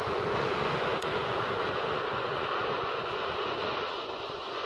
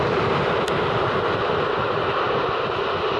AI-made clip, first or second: first